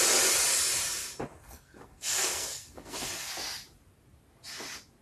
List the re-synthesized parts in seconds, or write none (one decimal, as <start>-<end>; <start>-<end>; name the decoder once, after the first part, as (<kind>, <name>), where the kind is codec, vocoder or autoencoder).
1.3-3.3 (codec, SNAC)